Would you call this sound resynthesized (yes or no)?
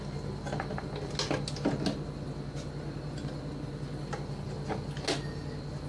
no